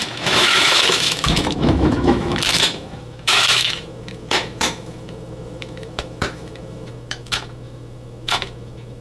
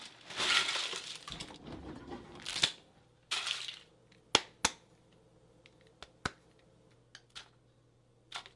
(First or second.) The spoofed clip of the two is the first